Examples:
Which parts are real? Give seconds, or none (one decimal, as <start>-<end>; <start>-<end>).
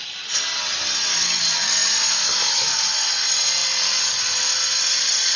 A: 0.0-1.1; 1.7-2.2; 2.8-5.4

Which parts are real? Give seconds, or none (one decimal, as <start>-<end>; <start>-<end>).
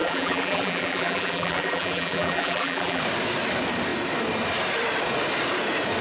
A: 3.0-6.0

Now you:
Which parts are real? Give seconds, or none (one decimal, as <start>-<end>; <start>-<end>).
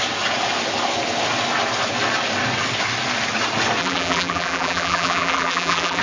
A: 0.0-3.8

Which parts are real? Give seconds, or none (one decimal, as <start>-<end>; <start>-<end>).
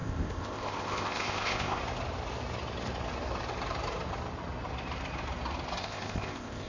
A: 1.8-5.8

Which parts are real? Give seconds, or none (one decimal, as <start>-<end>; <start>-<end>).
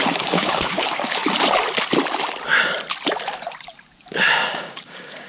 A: 1.2-4.4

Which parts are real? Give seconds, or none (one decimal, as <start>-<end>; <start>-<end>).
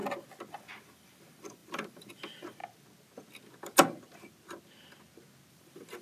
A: 0.0-0.5; 2.6-5.5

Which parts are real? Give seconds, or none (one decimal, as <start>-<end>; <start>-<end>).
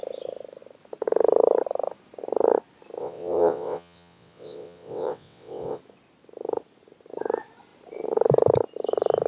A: 0.0-3.0; 5.8-9.3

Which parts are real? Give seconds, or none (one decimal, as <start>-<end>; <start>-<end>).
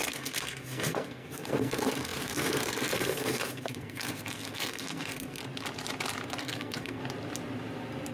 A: 5.4-6.4; 7.0-8.1